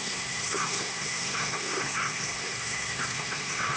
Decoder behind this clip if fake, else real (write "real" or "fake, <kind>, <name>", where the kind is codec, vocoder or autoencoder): fake, codec, SNAC